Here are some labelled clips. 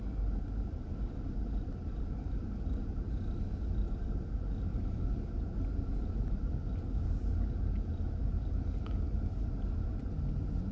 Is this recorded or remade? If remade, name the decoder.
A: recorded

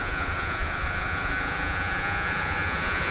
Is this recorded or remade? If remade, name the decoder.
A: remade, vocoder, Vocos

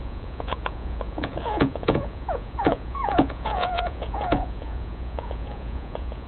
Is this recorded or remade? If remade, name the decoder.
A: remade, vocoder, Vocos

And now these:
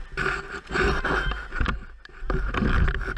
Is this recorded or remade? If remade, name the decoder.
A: recorded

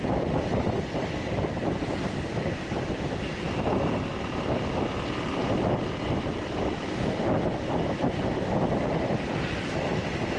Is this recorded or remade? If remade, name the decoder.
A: recorded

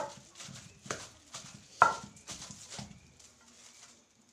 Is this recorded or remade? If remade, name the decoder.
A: recorded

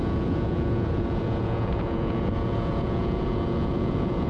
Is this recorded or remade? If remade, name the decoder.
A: remade, vocoder, Vocos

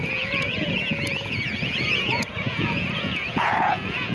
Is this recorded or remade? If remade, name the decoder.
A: remade, vocoder, Vocos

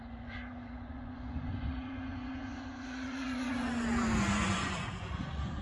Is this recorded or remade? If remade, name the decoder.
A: remade, vocoder, Vocos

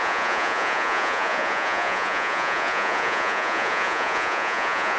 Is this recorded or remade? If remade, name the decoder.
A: remade, vocoder, Vocos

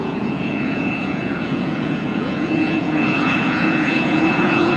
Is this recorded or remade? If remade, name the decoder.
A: remade, vocoder, Vocos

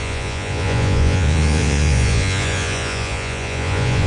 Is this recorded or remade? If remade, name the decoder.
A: remade, vocoder, Vocos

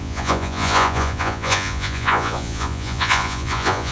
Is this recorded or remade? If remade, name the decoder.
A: remade, vocoder, Vocos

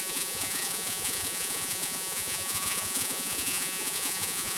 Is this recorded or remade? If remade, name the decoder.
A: remade, vocoder, Vocos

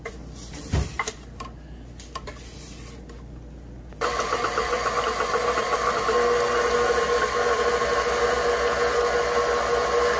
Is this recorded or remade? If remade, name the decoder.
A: recorded